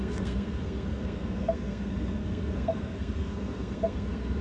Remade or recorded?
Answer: remade